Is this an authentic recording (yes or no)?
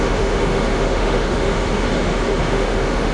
no